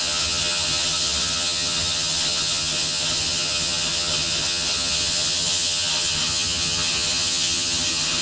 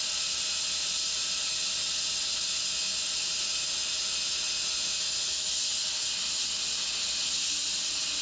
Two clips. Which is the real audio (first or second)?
second